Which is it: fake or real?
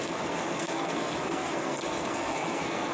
fake